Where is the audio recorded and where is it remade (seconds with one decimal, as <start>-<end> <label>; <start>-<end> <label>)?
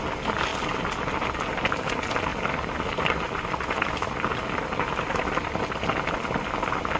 0.0-7.0 recorded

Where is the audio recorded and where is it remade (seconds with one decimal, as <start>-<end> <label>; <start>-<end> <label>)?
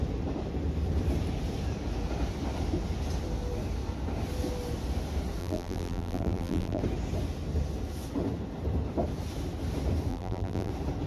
0.0-5.4 recorded; 5.4-6.8 remade; 6.8-10.1 recorded; 10.1-10.7 remade; 10.7-11.1 recorded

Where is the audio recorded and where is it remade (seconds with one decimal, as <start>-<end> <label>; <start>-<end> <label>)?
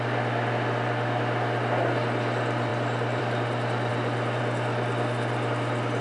0.0-6.0 recorded